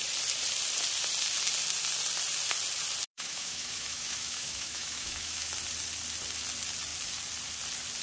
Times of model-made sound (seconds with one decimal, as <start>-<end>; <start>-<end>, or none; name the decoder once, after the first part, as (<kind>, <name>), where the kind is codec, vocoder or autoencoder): 3.1-5.5 (autoencoder, DAC-VAE)